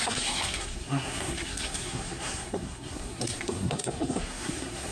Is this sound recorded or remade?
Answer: remade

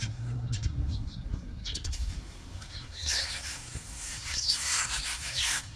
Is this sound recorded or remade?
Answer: remade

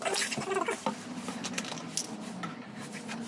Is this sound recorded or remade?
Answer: recorded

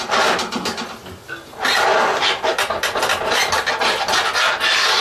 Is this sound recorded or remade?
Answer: recorded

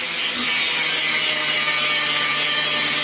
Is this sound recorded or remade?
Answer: recorded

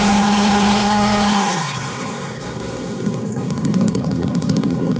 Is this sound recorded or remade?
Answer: remade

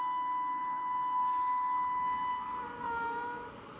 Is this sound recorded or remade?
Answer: recorded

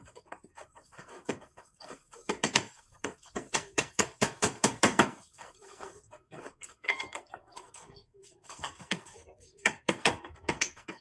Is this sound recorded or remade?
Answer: remade